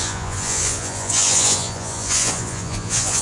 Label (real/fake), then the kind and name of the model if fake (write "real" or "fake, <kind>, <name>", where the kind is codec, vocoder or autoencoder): fake, vocoder, Vocos